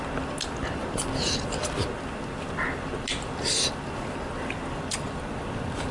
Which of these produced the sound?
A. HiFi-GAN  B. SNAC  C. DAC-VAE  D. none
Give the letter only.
D